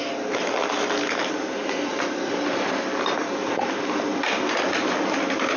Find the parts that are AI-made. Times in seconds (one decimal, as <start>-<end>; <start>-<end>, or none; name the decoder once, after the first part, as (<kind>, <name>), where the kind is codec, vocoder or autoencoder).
none